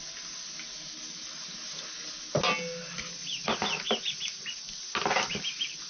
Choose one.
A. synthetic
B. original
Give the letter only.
B